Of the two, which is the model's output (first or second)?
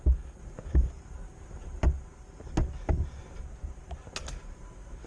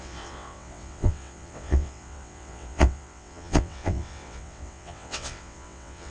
second